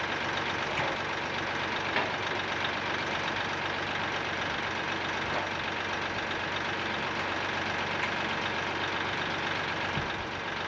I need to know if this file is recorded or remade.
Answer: recorded